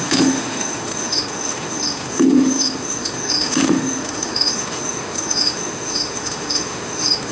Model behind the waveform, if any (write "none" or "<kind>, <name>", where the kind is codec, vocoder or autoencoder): autoencoder, DAC-VAE